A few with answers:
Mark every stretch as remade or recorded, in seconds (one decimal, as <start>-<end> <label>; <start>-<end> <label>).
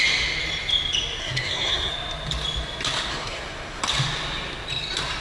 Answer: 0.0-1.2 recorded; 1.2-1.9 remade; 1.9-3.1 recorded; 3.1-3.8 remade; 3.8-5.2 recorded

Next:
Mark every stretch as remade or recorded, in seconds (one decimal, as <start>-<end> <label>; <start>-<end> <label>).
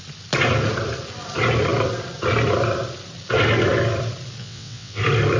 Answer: 0.0-4.4 recorded; 4.4-5.0 remade; 5.0-5.4 recorded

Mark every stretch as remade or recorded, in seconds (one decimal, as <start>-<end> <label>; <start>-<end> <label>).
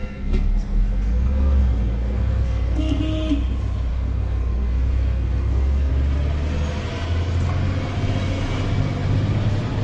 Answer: 0.0-3.0 remade; 3.0-3.9 recorded; 3.9-5.9 remade; 5.9-9.8 recorded